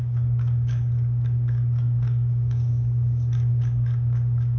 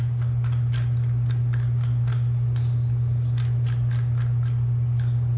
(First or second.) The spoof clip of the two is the first